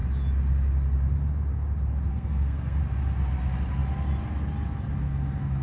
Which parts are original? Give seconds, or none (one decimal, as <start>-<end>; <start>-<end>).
0.0-2.1; 2.8-5.6